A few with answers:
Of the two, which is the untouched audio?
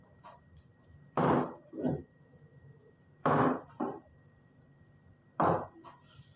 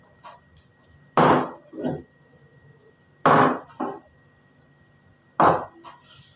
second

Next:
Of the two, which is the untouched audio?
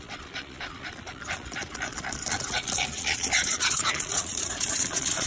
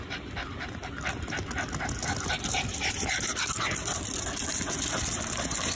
second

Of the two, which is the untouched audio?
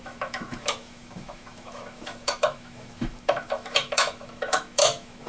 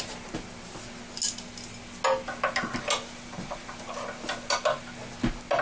second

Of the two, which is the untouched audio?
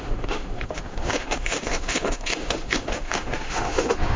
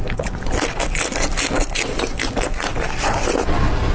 second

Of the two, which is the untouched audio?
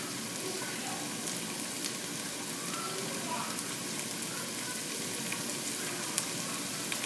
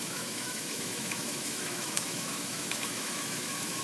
first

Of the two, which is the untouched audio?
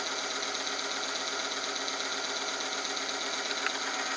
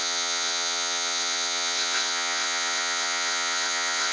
first